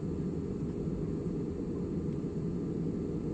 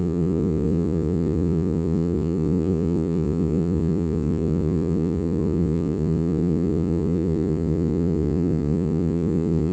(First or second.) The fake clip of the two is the second